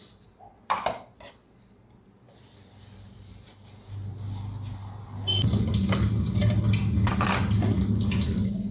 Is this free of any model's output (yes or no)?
yes